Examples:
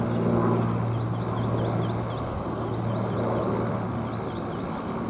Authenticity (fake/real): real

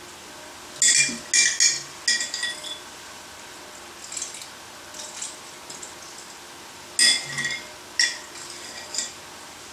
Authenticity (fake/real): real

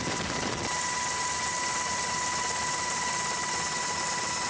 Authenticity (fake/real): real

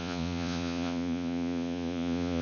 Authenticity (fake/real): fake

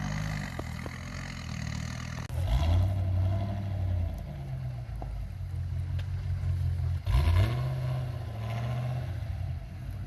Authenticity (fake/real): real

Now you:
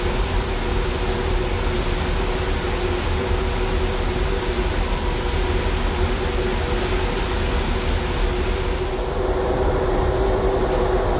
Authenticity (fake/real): real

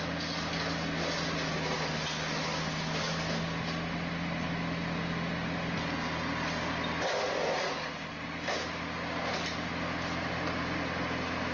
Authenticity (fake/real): real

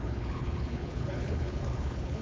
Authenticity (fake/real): fake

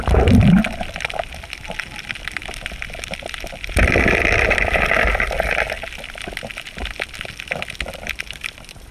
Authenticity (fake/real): real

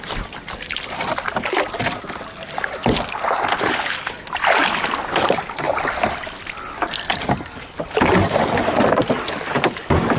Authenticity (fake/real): real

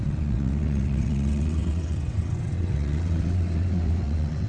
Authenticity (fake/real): fake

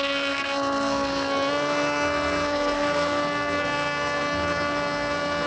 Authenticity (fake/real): fake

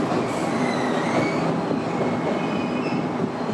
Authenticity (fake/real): real